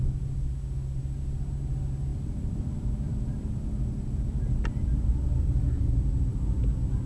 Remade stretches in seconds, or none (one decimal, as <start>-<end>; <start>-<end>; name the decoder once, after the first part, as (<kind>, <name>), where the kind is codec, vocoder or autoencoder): 2.1-6.4 (vocoder, BigVGAN v2)